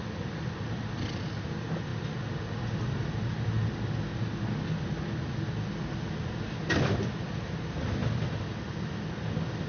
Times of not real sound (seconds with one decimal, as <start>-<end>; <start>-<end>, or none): 0.0-1.9; 6.7-9.7